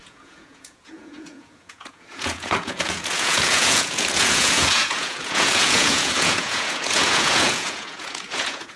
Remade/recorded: remade